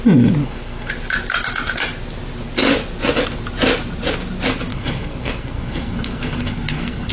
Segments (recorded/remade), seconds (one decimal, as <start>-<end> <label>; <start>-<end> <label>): 0.0-0.4 recorded; 0.4-0.9 remade; 0.9-4.7 recorded; 4.7-7.1 remade